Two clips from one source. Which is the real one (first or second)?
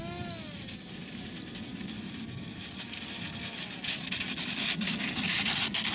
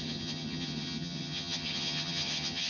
first